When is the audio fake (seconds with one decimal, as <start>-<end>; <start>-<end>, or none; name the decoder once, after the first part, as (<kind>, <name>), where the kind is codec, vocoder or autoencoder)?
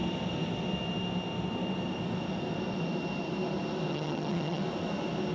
3.9-4.6 (vocoder, HiFi-GAN)